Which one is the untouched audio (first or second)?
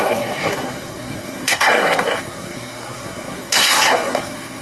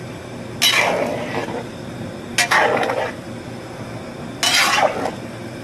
second